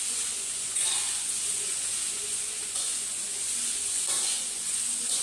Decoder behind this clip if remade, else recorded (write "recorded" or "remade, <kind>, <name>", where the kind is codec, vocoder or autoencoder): remade, vocoder, Vocos